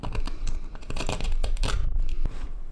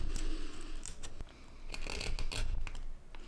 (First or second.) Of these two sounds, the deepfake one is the first